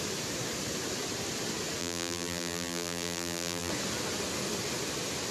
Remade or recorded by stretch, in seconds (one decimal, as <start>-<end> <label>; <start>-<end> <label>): 0.0-1.8 recorded; 1.8-3.7 remade; 3.7-5.3 recorded